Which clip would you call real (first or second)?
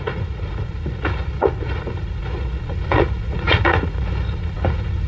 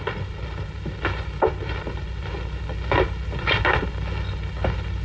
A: second